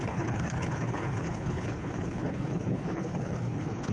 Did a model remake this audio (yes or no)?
yes